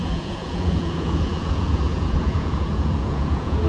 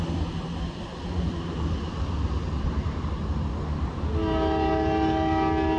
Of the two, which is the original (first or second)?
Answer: second